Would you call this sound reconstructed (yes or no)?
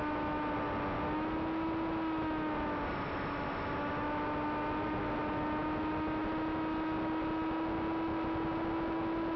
no